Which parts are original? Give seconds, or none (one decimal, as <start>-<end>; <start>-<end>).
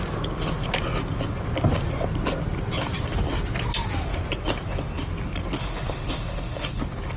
0.0-5.6; 6.8-7.2